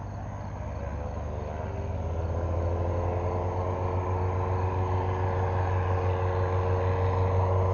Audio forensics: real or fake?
real